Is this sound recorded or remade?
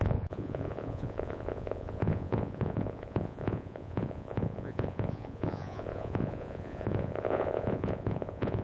remade